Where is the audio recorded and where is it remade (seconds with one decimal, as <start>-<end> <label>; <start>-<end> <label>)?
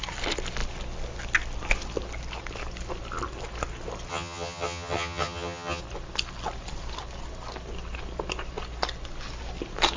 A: 0.0-4.1 recorded; 4.1-5.8 remade; 5.8-10.0 recorded